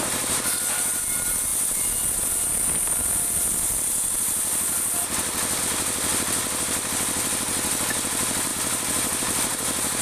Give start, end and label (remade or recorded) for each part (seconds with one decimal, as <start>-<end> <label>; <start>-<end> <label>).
0.0-8.5 recorded; 8.5-10.0 remade